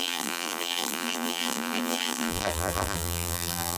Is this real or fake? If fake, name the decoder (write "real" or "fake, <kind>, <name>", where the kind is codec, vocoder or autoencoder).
fake, vocoder, BigVGAN v2